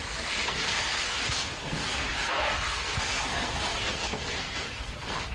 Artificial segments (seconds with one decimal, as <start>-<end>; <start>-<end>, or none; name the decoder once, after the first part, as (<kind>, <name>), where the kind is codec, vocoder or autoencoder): 0.0-5.3 (codec, SNAC)